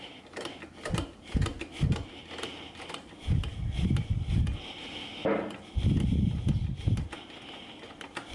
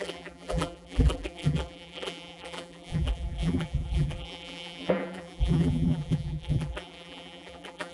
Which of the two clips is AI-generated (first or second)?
second